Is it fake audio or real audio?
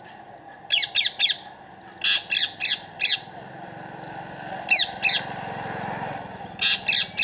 real